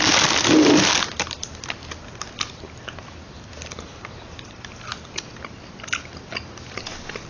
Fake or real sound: real